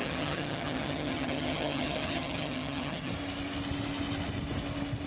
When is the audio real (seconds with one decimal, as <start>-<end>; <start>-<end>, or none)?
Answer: 3.1-5.1